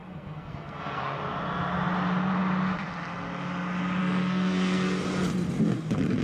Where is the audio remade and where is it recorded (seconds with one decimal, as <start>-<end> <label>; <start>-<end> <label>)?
0.0-1.0 remade; 1.0-4.0 recorded; 4.0-5.0 remade; 5.0-6.2 recorded